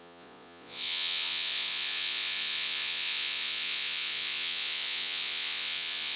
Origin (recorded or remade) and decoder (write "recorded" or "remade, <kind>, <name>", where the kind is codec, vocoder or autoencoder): remade, vocoder, Vocos